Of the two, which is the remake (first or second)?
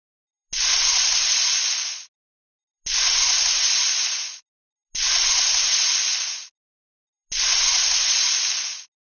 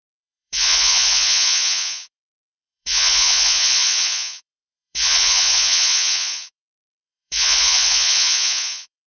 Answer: second